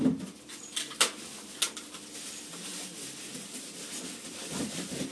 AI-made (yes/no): no